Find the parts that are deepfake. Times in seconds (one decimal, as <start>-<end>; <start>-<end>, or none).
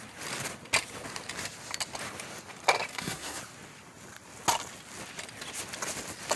2.9-3.4